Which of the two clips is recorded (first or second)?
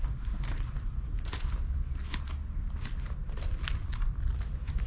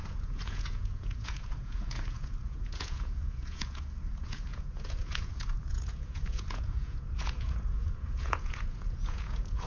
first